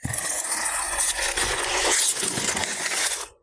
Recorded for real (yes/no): no